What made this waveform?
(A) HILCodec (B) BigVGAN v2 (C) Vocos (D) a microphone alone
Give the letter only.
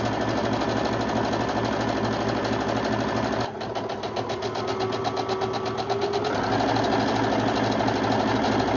D